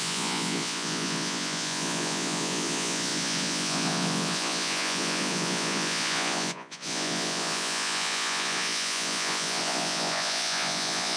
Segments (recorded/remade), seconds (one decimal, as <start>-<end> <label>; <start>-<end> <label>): 0.0-11.2 remade